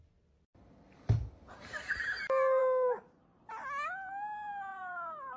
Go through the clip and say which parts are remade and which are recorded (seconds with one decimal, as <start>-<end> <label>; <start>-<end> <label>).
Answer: 0.0-1.4 recorded; 1.4-2.0 remade; 2.0-4.7 recorded; 4.7-5.4 remade